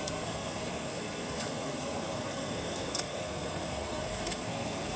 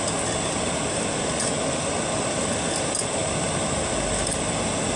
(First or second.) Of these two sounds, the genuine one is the second